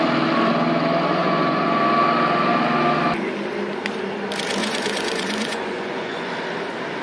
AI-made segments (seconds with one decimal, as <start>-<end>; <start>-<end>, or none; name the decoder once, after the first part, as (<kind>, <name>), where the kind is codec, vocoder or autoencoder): 1.2-1.8 (vocoder, Vocos); 4.6-6.3